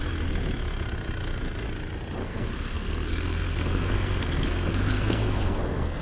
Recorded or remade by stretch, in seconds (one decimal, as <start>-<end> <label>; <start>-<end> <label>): 0.0-2.2 recorded; 2.2-6.0 remade